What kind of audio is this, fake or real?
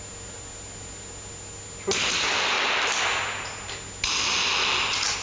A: real